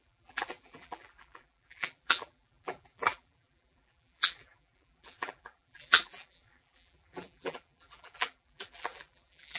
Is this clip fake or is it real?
fake